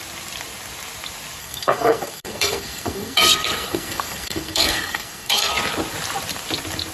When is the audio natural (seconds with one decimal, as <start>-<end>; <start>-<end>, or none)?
0.0-1.4; 5.5-6.9

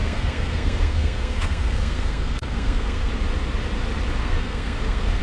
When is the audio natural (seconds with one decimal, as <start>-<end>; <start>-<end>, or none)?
3.1-4.2

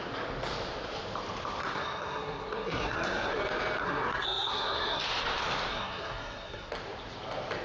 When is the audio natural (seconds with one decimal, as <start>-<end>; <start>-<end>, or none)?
0.0-1.6; 3.3-3.8; 5.0-5.7; 6.7-7.6

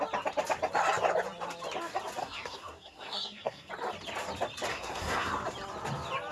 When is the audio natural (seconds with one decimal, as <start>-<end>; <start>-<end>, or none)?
0.0-2.2; 3.7-4.7; 5.3-6.3

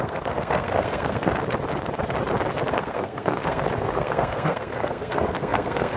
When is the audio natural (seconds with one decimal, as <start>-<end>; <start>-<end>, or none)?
1.3-2.7

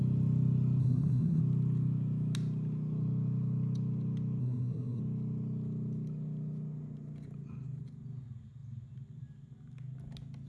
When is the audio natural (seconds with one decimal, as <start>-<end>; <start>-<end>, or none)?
0.0-0.8; 1.4-4.4; 5.0-10.5

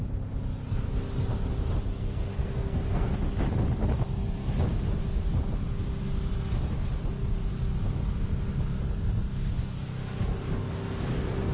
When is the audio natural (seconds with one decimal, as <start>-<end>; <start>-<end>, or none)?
0.0-1.9; 3.1-11.5

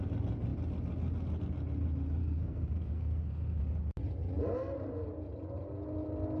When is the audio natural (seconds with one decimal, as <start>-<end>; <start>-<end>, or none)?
0.0-2.2; 3.6-6.4